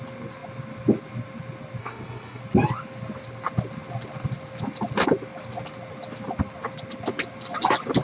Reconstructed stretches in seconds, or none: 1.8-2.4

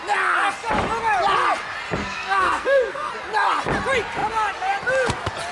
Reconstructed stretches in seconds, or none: 2.0-3.1

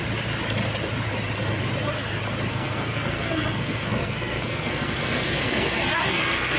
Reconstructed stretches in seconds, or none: 2.5-6.6

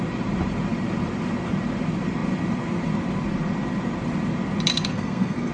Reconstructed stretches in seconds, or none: 4.7-5.5

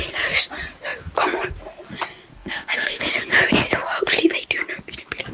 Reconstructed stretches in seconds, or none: 2.3-3.0